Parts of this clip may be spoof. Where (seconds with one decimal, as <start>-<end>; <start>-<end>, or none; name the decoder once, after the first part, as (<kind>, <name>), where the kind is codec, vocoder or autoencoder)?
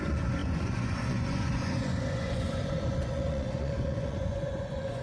0.0-5.0 (vocoder, Vocos)